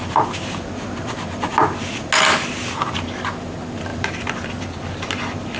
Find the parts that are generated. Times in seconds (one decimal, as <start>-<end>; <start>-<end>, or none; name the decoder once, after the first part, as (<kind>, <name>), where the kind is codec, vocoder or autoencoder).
3.9-4.9 (vocoder, BigVGAN v2)